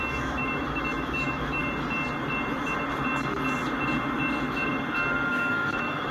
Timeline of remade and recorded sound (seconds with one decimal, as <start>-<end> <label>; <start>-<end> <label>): 0.0-1.6 remade; 1.6-5.3 recorded; 5.3-6.1 remade